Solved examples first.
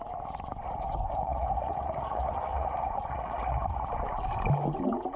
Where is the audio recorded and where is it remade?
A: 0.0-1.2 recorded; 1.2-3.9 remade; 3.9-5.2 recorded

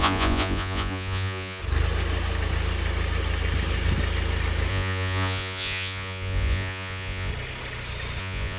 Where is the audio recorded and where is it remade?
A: 0.0-1.6 remade; 1.6-4.7 recorded; 4.7-7.3 remade; 7.3-8.2 recorded; 8.2-8.6 remade

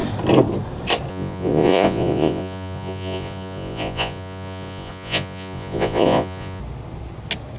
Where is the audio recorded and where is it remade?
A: 0.0-1.1 recorded; 1.1-6.6 remade; 6.6-7.6 recorded

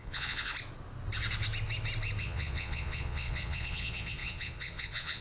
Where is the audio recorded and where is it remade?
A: 0.0-0.5 remade; 0.5-2.2 recorded; 2.2-5.2 remade

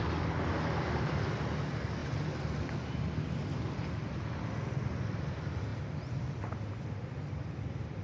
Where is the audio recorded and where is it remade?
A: 0.0-8.0 recorded

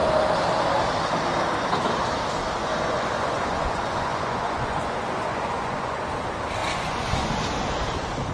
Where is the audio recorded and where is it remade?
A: 0.0-2.6 recorded; 2.6-6.0 remade; 6.0-6.6 recorded; 6.6-7.3 remade; 7.3-8.3 recorded